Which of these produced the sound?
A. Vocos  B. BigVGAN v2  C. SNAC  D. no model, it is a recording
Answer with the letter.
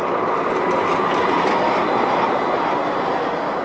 D